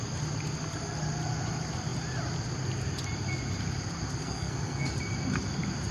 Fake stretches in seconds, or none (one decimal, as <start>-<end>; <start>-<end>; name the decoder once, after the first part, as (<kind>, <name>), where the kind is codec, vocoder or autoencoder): 4.2-4.9 (codec, SNAC)